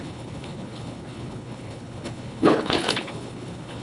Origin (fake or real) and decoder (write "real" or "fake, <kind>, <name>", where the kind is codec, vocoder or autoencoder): fake, codec, HILCodec